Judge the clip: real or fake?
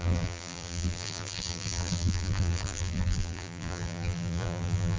fake